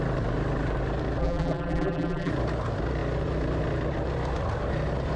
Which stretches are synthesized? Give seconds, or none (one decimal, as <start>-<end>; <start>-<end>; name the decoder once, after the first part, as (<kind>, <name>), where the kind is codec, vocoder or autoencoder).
1.2-2.3 (vocoder, BigVGAN v2)